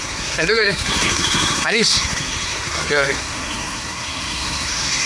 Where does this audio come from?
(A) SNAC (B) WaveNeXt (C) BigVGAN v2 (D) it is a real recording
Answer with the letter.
A